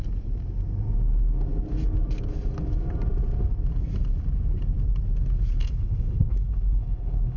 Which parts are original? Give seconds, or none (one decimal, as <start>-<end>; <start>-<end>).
0.0-5.6